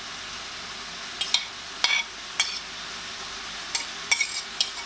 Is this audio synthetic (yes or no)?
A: no